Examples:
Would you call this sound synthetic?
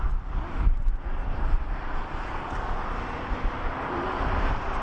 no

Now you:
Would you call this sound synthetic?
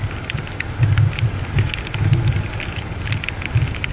no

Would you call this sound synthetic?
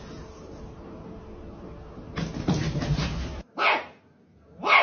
no